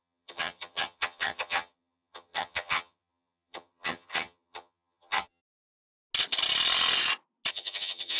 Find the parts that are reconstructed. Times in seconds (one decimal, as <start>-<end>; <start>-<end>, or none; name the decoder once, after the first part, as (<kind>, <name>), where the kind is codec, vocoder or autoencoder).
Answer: 0.0-5.4 (vocoder, HiFi-GAN); 7.5-8.2